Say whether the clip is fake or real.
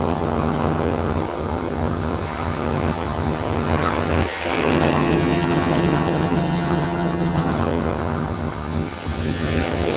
fake